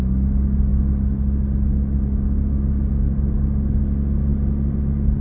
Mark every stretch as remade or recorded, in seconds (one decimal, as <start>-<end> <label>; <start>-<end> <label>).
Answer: 0.0-5.2 recorded